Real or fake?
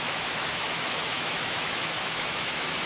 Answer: fake